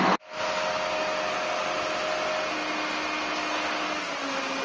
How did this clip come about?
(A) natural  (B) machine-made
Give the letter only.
A